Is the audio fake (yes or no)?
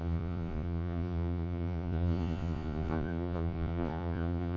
yes